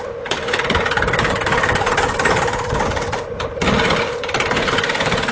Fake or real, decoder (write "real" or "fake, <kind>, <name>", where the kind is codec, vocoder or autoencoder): real